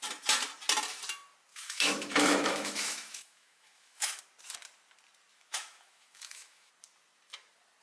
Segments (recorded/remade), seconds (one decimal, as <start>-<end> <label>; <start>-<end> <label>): 0.0-1.5 recorded; 1.5-4.2 remade; 4.2-5.3 recorded; 5.3-6.7 remade; 6.7-7.8 recorded